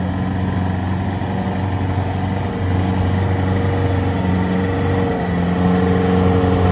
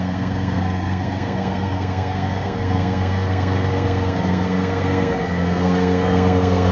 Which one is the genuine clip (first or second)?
first